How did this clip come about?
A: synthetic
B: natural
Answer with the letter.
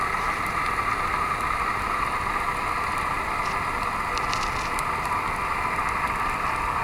B